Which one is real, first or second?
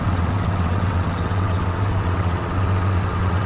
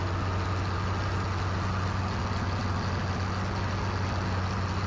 second